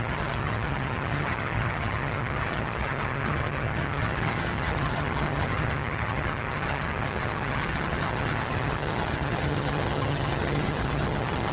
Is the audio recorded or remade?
remade